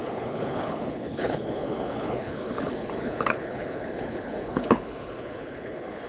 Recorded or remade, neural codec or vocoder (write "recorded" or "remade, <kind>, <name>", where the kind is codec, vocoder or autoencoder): remade, codec, HILCodec